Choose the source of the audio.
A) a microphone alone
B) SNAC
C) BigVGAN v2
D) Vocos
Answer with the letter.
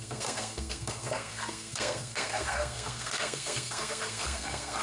B